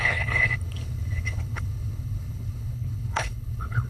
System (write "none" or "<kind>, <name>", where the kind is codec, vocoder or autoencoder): codec, HILCodec